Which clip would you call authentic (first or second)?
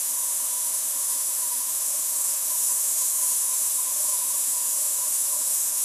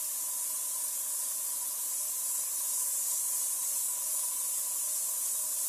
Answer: second